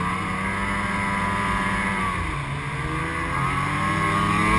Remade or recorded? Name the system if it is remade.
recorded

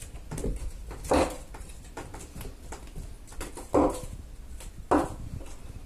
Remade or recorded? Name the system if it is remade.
recorded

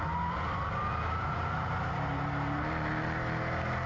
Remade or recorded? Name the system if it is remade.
recorded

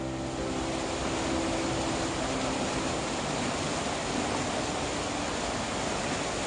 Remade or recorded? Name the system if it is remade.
recorded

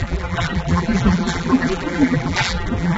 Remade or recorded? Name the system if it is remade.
remade, vocoder, BigVGAN v2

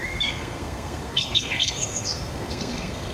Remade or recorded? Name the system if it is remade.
remade, codec, SNAC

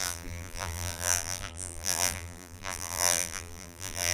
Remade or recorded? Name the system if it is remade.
remade, vocoder, BigVGAN v2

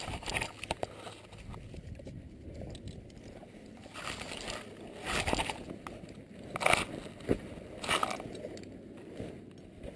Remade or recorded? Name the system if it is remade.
recorded